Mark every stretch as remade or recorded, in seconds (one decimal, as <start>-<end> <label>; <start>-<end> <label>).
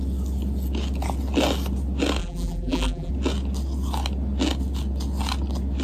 0.0-2.2 recorded; 2.2-3.1 remade; 3.1-5.8 recorded